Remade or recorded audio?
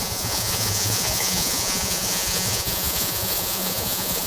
remade